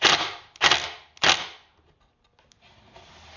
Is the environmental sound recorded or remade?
recorded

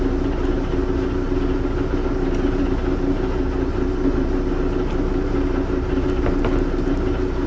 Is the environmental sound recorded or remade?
recorded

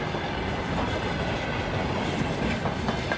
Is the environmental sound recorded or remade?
recorded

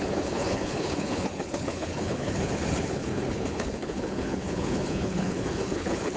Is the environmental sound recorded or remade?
remade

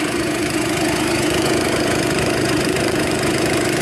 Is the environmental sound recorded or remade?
remade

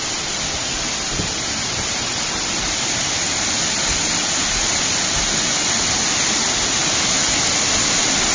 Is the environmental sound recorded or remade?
recorded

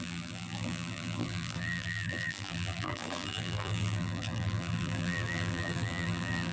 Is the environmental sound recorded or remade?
remade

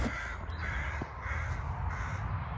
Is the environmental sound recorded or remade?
recorded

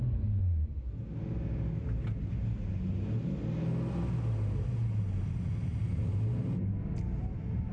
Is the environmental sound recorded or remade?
recorded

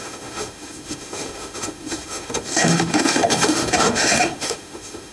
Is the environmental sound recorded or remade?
remade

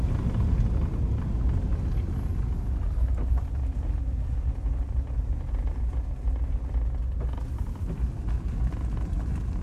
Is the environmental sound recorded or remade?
recorded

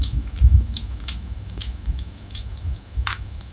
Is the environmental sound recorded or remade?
remade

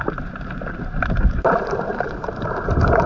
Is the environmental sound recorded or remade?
remade